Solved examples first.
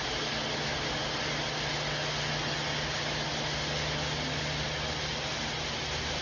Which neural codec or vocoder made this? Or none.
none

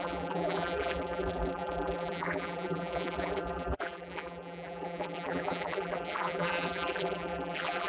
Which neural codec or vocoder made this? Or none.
vocoder, BigVGAN v2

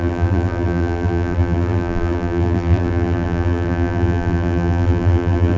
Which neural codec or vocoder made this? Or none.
vocoder, BigVGAN v2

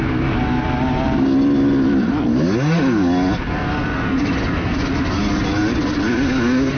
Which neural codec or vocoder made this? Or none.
none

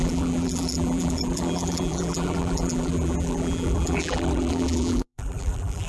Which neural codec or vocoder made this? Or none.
vocoder, BigVGAN v2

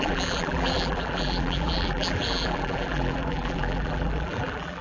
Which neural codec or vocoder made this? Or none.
vocoder, BigVGAN v2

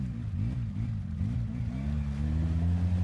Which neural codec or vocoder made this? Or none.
none